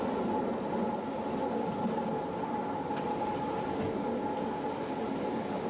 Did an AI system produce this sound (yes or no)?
no